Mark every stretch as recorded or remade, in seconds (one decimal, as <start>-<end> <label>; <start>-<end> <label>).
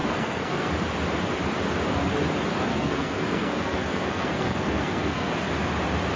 0.0-0.7 remade; 0.7-2.7 recorded; 2.7-5.3 remade; 5.3-6.2 recorded